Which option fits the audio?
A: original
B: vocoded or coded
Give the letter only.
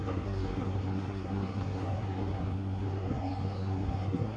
B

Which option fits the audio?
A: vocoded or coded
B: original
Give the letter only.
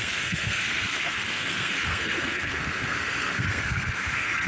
A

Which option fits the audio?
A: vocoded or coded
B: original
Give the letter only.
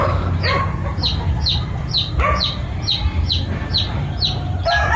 B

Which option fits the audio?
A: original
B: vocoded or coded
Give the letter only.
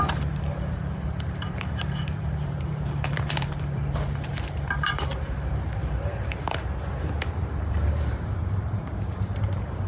B